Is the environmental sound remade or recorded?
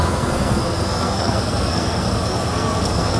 remade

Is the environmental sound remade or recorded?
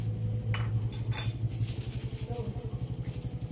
recorded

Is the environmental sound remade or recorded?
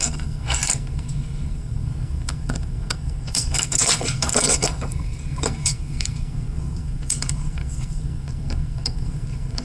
remade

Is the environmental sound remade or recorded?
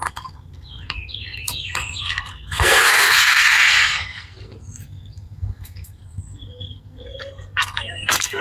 remade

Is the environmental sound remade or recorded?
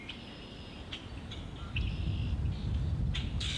recorded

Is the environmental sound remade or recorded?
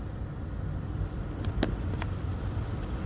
recorded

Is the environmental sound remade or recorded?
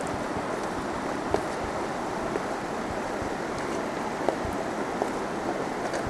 recorded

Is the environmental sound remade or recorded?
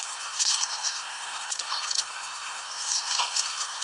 remade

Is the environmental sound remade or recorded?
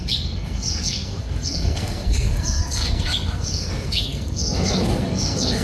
remade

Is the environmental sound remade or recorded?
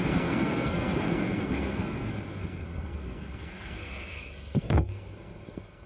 remade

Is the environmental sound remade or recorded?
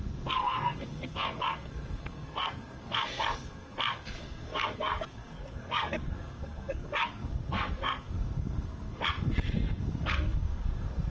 remade